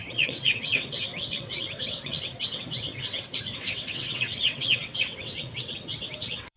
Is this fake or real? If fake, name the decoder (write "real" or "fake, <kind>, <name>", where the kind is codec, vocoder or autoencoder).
fake, vocoder, WaveNeXt